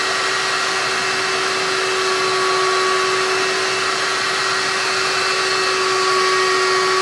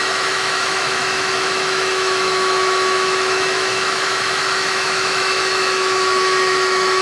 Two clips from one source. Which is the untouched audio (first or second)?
first